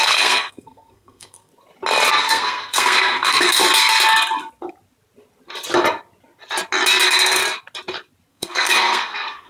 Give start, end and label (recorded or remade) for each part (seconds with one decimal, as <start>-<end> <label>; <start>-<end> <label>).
0.0-1.5 remade; 1.5-2.1 recorded; 2.1-3.6 remade; 3.6-7.0 recorded; 7.0-7.4 remade; 7.4-8.3 recorded; 8.3-9.5 remade